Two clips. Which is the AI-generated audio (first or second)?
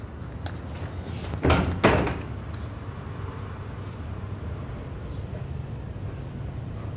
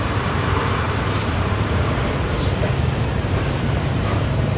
second